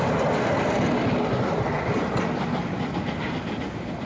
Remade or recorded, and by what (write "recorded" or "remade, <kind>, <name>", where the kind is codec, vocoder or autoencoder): recorded